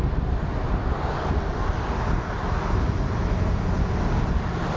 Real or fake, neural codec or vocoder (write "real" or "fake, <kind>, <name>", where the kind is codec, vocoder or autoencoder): real